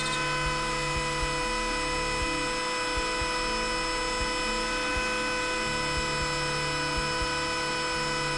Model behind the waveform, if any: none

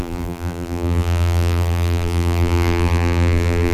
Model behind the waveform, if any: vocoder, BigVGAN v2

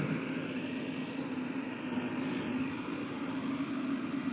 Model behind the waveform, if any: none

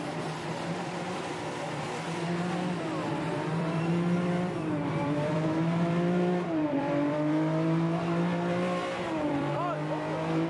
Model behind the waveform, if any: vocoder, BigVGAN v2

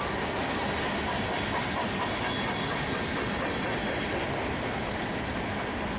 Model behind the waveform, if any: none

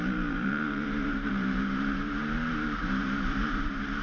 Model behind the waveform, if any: vocoder, BigVGAN v2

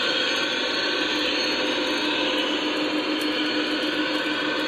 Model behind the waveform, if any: none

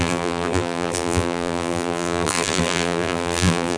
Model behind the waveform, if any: vocoder, BigVGAN v2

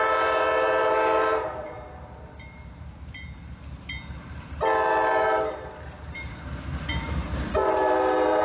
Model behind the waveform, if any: vocoder, BigVGAN v2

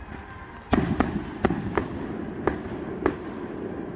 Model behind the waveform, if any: none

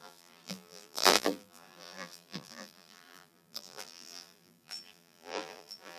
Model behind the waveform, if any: vocoder, BigVGAN v2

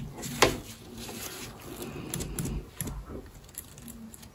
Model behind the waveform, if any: none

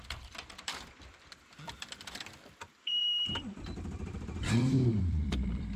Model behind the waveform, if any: vocoder, BigVGAN v2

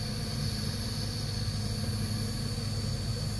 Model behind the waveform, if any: none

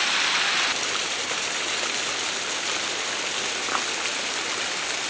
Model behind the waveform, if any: none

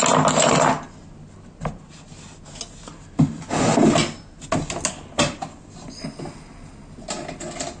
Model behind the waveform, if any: none